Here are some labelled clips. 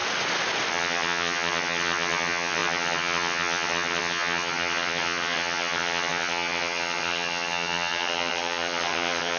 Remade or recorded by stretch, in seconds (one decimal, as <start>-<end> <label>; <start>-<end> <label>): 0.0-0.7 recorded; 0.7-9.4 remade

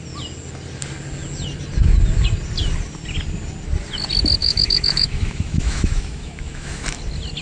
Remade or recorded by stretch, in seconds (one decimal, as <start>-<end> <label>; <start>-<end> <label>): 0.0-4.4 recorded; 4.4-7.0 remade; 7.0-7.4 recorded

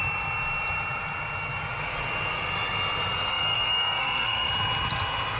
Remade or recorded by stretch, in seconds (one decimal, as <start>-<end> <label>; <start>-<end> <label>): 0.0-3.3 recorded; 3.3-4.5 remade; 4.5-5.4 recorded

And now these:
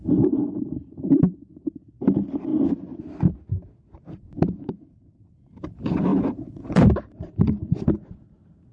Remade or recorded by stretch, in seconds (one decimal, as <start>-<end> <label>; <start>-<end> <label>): 0.0-2.5 remade; 2.5-4.9 recorded; 4.9-8.7 remade